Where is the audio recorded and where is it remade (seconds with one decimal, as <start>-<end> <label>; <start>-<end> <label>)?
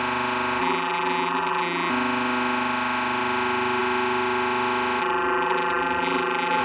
0.0-0.6 recorded; 0.6-1.9 remade; 1.9-5.0 recorded; 5.0-6.6 remade